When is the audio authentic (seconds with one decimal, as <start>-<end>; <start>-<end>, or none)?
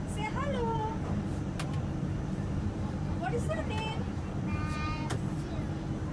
none